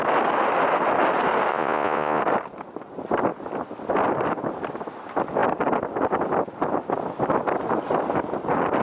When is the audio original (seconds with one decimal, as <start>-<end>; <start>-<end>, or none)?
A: 0.0-1.5; 2.2-8.8